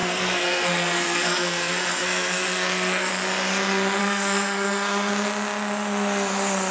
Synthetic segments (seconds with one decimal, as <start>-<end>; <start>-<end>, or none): 0.0-3.1; 4.0-5.1